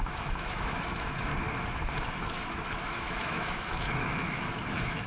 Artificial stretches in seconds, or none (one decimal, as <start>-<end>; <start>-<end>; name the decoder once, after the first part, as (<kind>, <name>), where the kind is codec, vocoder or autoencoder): 0.0-1.3 (autoencoder, DAC-VAE); 2.0-5.1